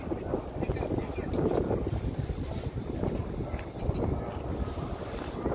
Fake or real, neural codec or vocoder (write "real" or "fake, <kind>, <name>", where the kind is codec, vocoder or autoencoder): real